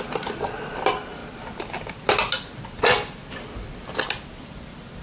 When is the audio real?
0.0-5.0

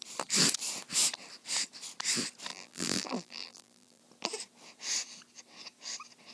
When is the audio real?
0.0-2.5; 4.0-6.3

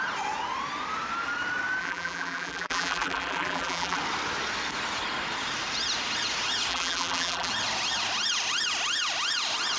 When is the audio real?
0.0-1.8; 4.0-6.7; 7.5-9.8